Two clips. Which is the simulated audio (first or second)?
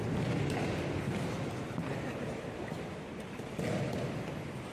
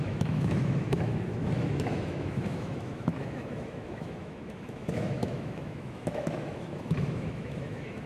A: second